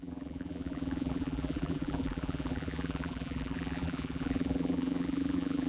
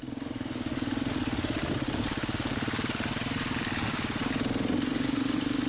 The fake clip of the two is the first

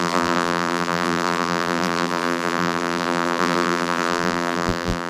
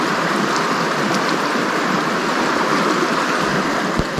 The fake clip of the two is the first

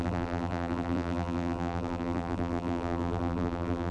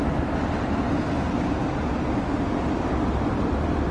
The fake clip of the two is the first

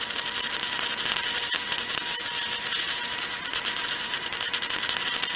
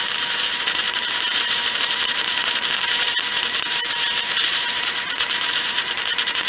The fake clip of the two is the second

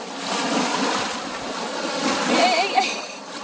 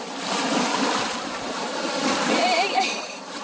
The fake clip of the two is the second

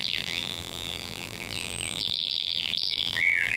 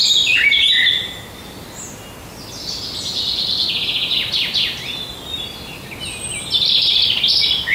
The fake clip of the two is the first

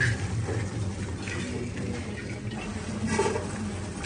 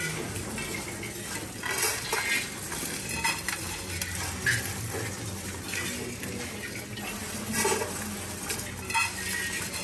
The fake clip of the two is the first